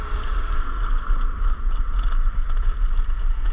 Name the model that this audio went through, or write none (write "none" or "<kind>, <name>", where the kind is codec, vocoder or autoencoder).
none